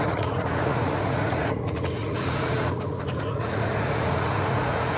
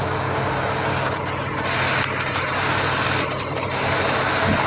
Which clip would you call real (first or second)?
second